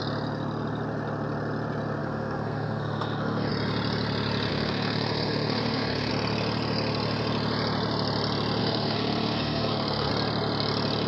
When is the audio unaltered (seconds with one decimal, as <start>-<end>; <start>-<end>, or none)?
0.0-2.0; 3.5-4.5; 6.1-8.6; 10.1-11.1